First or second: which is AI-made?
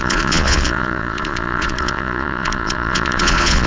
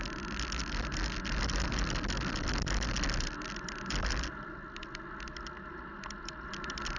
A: first